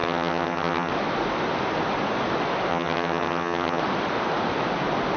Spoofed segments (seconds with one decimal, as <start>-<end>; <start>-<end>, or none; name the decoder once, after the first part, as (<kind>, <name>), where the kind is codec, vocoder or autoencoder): 0.0-0.9 (vocoder, HiFi-GAN); 2.7-3.8